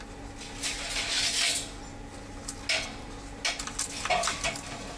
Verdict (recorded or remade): recorded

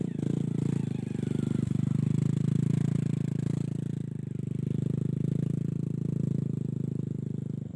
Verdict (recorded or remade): recorded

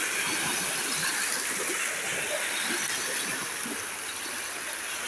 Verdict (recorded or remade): recorded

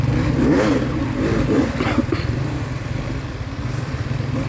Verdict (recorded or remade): remade